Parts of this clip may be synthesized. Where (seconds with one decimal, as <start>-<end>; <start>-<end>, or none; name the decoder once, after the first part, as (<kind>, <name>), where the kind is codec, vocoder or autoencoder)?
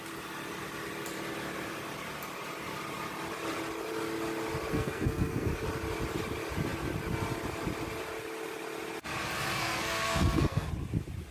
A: 4.7-5.5 (codec, SNAC); 9.6-10.7